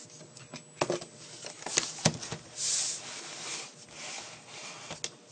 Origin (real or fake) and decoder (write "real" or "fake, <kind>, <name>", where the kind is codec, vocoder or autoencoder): real